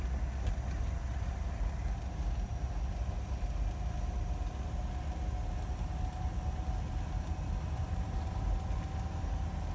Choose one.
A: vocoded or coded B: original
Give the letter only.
B